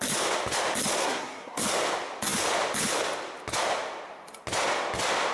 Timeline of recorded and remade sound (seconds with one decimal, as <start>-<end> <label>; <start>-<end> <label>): 0.0-1.0 recorded; 1.0-1.6 remade; 1.6-5.3 recorded